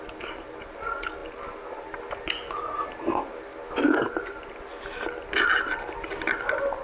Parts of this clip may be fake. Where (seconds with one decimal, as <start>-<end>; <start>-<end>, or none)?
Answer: none